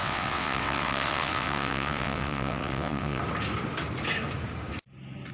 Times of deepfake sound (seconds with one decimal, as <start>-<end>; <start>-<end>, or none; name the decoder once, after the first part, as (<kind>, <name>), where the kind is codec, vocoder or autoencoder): 0.0-3.2 (vocoder, WaveNeXt)